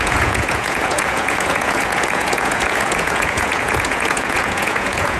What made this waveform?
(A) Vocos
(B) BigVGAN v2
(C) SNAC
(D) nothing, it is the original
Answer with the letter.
A